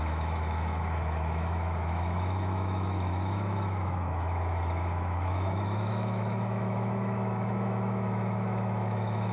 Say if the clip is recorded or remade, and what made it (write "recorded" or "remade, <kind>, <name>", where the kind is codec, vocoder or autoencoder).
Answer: remade, autoencoder, DAC-VAE